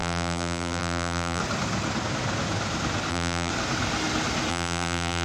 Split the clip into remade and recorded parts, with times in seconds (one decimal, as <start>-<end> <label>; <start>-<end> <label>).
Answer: 0.0-1.4 remade; 1.4-3.1 recorded; 3.1-3.5 remade; 3.5-4.5 recorded; 4.5-5.2 remade